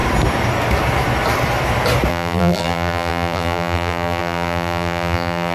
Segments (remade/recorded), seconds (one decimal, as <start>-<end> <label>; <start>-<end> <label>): 0.0-2.1 recorded; 2.1-5.5 remade